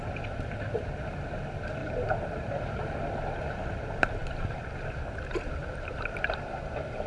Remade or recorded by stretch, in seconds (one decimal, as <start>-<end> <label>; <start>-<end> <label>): 0.0-1.8 recorded; 1.8-2.9 remade; 2.9-7.1 recorded